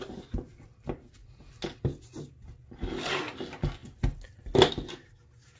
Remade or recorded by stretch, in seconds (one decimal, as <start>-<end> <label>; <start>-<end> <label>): 0.0-5.6 recorded